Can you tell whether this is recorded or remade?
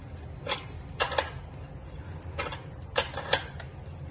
recorded